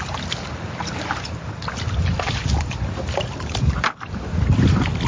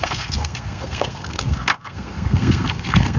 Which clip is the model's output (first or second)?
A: second